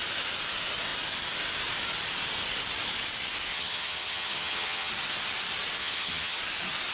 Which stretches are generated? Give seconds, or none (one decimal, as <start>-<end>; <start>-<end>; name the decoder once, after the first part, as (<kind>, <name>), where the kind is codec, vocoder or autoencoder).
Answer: 3.5-4.9 (vocoder, HiFi-GAN); 5.8-6.4